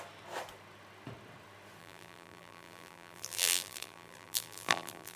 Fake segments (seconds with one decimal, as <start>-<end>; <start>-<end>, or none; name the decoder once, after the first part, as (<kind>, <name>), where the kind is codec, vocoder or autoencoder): 1.8-5.2 (vocoder, BigVGAN v2)